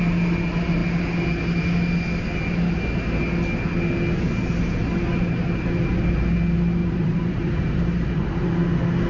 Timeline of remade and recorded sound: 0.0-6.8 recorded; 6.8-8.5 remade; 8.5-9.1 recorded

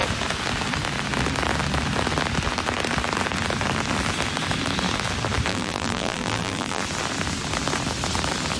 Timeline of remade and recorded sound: 0.0-5.5 recorded; 5.5-6.8 remade; 6.8-8.6 recorded

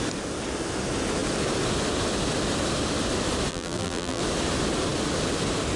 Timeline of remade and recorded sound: 0.0-3.5 recorded; 3.5-4.2 remade; 4.2-5.8 recorded